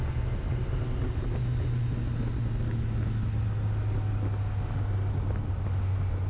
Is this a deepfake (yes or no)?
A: no